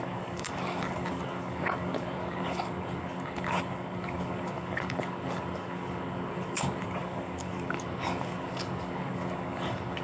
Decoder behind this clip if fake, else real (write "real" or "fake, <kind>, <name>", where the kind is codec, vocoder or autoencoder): fake, codec, DAC